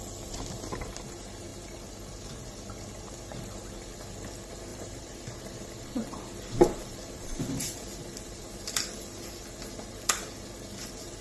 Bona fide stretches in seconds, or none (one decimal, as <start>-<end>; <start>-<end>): 0.0-1.5; 2.9-4.7; 7.4-8.4; 9.3-11.2